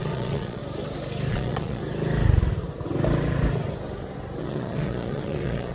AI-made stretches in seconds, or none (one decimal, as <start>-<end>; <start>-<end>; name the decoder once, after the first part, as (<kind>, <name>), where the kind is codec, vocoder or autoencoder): 0.0-0.6 (vocoder, Vocos); 1.3-1.8; 4.4-5.7